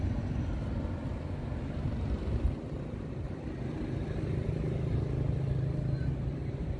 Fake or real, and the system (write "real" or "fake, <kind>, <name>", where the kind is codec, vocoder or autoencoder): real